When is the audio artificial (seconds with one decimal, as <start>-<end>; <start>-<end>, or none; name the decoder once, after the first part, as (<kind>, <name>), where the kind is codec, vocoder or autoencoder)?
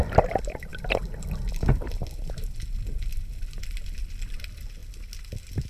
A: none